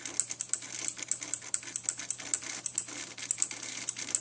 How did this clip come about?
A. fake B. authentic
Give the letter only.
B